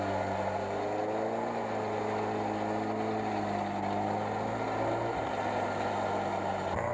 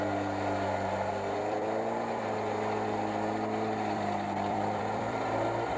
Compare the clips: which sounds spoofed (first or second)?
second